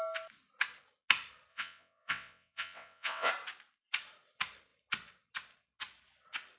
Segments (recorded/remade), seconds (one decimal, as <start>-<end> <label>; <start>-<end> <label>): 0.0-1.5 recorded; 1.5-3.3 remade; 3.3-6.6 recorded

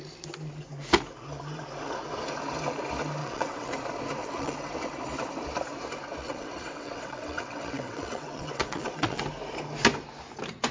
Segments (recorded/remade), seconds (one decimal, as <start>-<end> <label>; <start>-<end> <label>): 0.0-3.2 recorded; 3.2-3.7 remade; 3.7-4.2 recorded; 4.2-4.7 remade; 4.7-6.2 recorded; 6.2-9.2 remade; 9.2-10.7 recorded

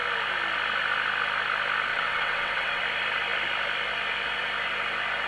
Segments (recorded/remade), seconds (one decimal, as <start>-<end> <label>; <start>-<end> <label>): 0.0-1.9 recorded; 1.9-2.8 remade; 2.8-5.3 recorded

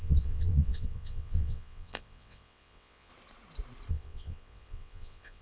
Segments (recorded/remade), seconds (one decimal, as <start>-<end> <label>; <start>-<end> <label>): 0.0-3.1 remade; 3.1-3.9 recorded; 3.9-5.4 remade

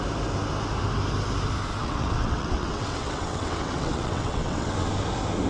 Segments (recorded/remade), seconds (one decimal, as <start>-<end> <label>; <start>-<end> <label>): 0.0-1.8 recorded; 1.8-4.9 remade; 4.9-5.5 recorded